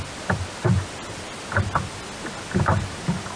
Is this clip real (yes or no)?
yes